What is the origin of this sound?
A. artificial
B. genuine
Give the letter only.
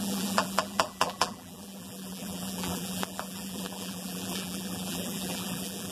A